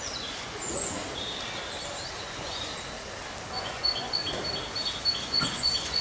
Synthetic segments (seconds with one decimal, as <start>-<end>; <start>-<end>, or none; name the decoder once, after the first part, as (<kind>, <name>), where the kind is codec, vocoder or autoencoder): 0.0-1.0 (vocoder, Vocos); 2.2-2.7; 3.5-4.2; 5.1-6.0